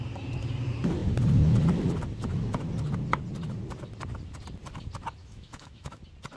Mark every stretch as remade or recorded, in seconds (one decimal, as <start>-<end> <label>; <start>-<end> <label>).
0.0-5.2 recorded; 5.2-6.0 remade; 6.0-6.4 recorded